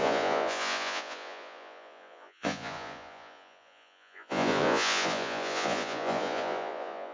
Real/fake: fake